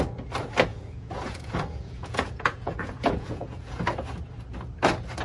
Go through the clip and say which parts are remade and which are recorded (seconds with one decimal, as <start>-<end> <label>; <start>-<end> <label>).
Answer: 0.0-0.7 recorded; 0.7-3.8 remade; 3.8-5.2 recorded